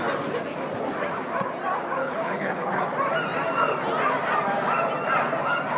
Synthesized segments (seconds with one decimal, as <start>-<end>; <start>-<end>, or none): 2.0-2.8